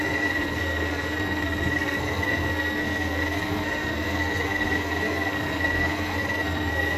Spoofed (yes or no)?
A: yes